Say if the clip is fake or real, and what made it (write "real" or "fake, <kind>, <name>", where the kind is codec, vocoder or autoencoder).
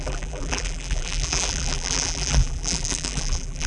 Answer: fake, vocoder, BigVGAN v2